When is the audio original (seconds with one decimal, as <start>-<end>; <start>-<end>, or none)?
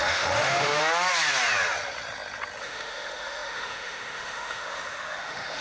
0.8-2.6